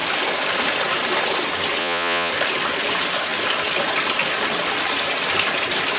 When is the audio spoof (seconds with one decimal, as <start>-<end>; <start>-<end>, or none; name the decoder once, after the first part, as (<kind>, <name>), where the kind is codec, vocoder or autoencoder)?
1.8-2.3 (vocoder, Vocos)